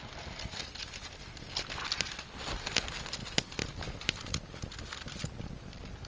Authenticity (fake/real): real